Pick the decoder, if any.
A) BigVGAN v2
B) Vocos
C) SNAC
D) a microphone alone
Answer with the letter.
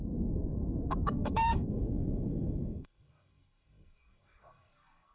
C